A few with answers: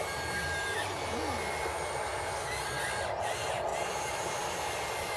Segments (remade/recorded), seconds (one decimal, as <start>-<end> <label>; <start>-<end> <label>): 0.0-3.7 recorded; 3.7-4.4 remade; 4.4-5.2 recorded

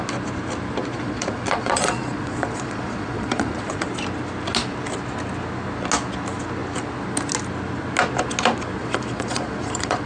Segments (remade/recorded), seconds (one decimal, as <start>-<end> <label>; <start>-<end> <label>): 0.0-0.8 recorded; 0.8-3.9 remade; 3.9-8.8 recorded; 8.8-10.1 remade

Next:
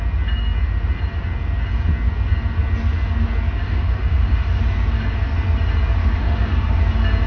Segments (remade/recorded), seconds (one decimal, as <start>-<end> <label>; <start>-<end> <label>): 0.0-3.6 recorded; 3.6-4.6 remade; 4.6-6.0 recorded; 6.0-6.8 remade; 6.8-7.3 recorded

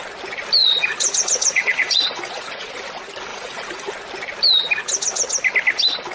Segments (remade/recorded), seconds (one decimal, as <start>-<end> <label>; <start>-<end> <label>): 0.0-0.6 recorded; 0.6-2.7 remade; 2.7-3.3 recorded; 3.3-3.9 remade; 3.9-6.1 recorded

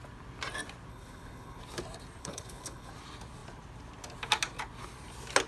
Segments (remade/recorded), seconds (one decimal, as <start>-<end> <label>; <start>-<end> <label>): 0.0-0.9 recorded; 0.9-1.6 remade; 1.6-2.2 recorded; 2.2-2.9 remade; 2.9-5.5 recorded

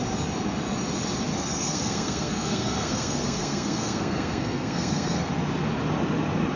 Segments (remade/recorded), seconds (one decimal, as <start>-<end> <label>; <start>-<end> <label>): 0.0-1.3 recorded; 1.3-5.3 remade; 5.3-6.6 recorded

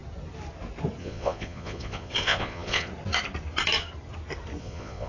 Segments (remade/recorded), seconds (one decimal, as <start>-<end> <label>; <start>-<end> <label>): 0.0-1.0 recorded; 1.0-2.9 remade; 2.9-4.6 recorded; 4.6-5.1 remade